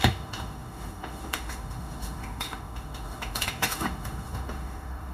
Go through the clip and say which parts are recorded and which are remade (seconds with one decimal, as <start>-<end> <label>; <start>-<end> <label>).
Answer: 0.0-5.1 remade